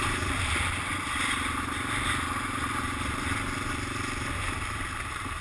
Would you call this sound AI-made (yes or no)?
no